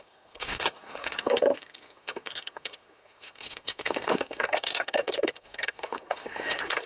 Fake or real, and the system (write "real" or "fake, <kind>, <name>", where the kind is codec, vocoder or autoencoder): fake, codec, SNAC